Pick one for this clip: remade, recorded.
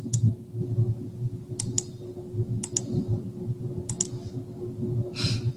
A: recorded